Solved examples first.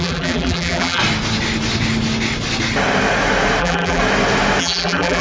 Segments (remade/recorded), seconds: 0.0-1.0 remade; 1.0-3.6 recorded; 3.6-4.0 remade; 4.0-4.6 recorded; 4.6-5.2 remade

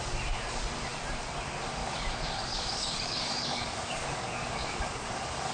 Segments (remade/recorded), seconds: 0.0-1.8 recorded; 1.8-5.1 remade; 5.1-5.5 recorded

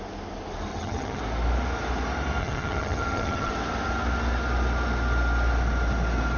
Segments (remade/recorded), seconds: 0.0-0.7 recorded; 0.7-1.2 remade; 1.2-2.4 recorded; 2.4-3.5 remade; 3.5-6.4 recorded